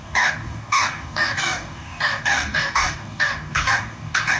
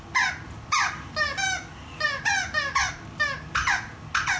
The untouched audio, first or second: second